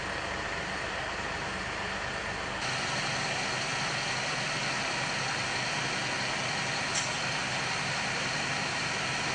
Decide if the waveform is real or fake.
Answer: real